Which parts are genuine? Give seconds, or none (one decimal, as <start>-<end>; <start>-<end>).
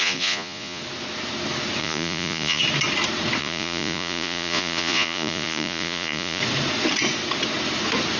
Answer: 0.8-1.8; 2.6-3.4; 6.4-8.2